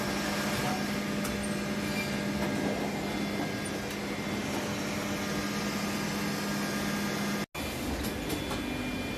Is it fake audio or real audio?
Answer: real